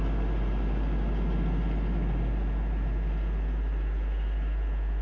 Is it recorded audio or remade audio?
recorded